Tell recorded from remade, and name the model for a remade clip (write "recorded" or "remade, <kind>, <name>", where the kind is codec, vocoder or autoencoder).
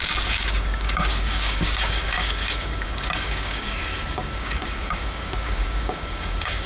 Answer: remade, codec, DAC